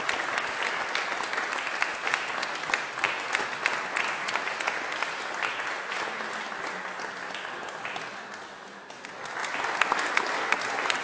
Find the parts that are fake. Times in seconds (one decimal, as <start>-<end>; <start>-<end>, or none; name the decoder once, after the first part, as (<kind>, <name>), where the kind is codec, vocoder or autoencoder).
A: none